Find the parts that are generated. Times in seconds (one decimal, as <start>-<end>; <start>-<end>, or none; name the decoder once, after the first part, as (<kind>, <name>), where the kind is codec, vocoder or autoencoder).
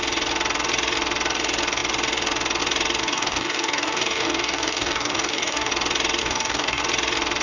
3.0-5.7 (codec, DAC); 6.2-6.8